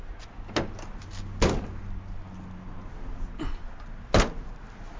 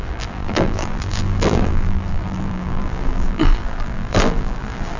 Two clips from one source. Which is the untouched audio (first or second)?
first